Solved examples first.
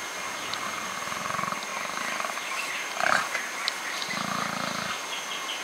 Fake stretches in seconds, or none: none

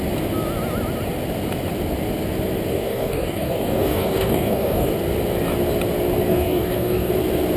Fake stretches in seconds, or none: 2.7-4.9 (codec, DAC); 6.3-7.1

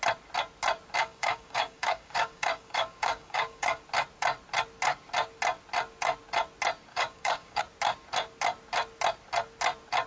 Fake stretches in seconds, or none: 1.0-3.8 (codec, DAC); 6.9-7.6

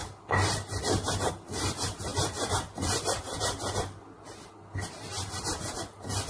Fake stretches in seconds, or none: none

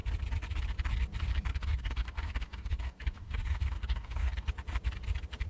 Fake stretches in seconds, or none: 1.5-4.5 (codec, DAC)

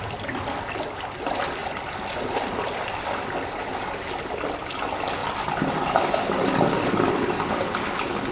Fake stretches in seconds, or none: none

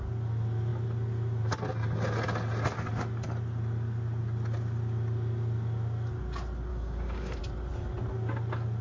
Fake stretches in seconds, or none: 6.7-7.4 (codec, DAC)

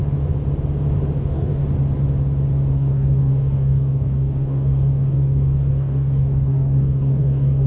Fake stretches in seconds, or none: 1.2-1.6 (codec, DAC); 2.7-7.7